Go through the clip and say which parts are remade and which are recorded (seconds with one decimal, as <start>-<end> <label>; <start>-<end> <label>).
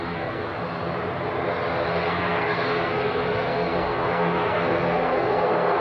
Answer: 0.0-0.5 remade; 0.5-1.9 recorded; 1.9-5.8 remade